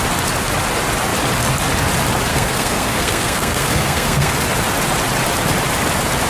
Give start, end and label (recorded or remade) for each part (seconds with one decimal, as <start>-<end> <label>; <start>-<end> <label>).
0.0-2.3 recorded; 2.3-4.3 remade; 4.3-6.3 recorded